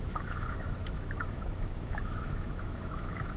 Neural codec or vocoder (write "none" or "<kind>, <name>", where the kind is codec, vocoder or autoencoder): autoencoder, DAC-VAE